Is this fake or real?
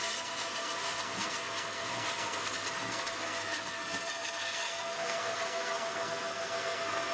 fake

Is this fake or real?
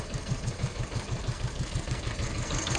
fake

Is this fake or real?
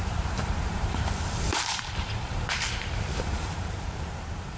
fake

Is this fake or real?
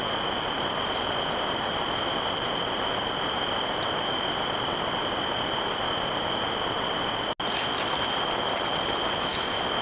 real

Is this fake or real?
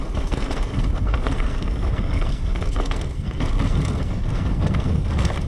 fake